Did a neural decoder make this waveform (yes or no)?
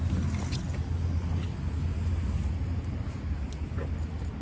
no